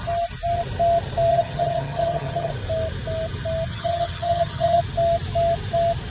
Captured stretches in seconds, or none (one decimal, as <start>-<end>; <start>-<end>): 0.0-1.3; 2.5-3.7; 4.8-6.1